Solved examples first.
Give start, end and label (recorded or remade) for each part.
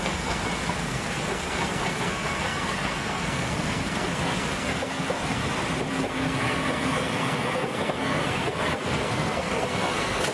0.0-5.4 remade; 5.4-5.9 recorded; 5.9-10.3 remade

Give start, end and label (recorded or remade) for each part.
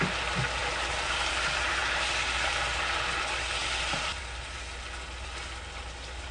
0.0-6.3 recorded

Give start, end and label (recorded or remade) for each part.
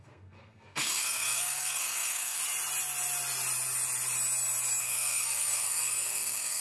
0.0-2.4 remade; 2.4-4.8 recorded; 4.8-6.6 remade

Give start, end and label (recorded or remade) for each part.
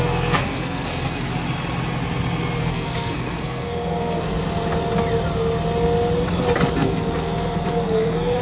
0.0-1.3 remade; 1.3-2.6 recorded; 2.6-4.3 remade; 4.3-6.7 recorded; 6.7-8.4 remade